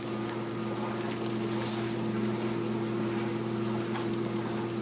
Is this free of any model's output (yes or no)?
yes